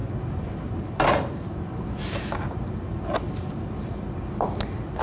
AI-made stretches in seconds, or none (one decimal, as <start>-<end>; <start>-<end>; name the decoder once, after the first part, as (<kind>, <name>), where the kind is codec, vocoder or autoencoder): none